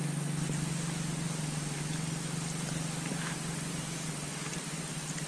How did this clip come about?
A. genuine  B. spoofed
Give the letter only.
A